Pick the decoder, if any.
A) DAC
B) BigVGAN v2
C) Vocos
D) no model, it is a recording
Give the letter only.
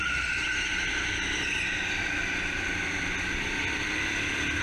D